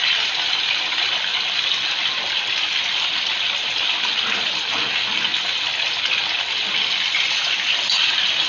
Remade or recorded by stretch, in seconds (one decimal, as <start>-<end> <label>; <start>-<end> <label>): 0.0-1.3 recorded; 1.3-4.9 remade; 4.9-8.5 recorded